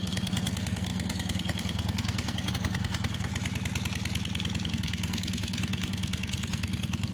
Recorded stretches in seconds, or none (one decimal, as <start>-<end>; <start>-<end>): 3.3-4.7